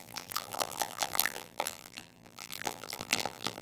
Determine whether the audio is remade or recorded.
remade